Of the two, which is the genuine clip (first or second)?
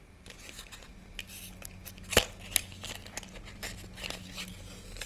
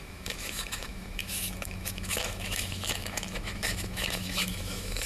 first